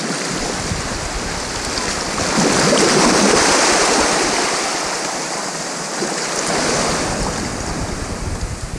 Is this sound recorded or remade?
recorded